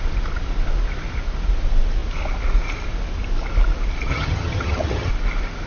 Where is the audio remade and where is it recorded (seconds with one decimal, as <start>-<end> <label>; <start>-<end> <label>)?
0.0-4.1 recorded; 4.1-5.1 remade; 5.1-5.7 recorded